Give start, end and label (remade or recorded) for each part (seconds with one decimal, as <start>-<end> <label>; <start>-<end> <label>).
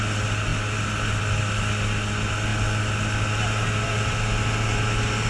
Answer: 0.0-5.3 recorded